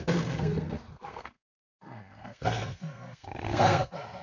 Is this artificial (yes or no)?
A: yes